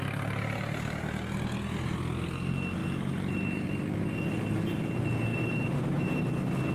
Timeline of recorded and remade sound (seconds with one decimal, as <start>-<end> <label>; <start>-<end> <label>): 0.0-2.8 recorded; 2.8-3.8 remade; 3.8-5.3 recorded; 5.3-6.1 remade; 6.1-6.7 recorded